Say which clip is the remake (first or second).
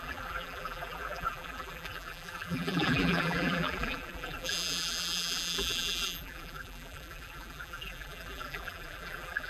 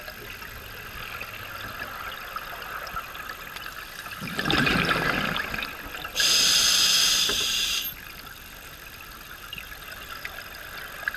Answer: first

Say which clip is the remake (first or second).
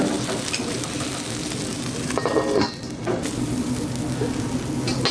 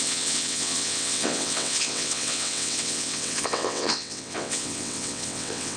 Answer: second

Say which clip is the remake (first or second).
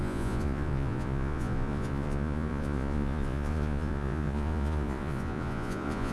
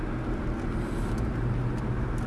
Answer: first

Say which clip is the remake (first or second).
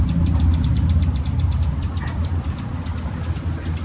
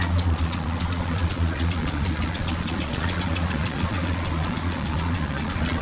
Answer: second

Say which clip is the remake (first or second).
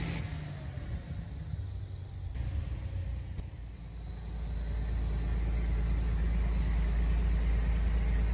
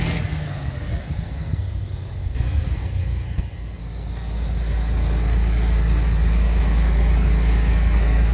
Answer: second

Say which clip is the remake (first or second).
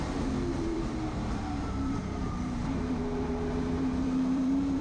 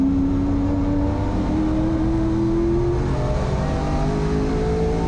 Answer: first